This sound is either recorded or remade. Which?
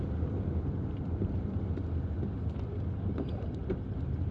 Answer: recorded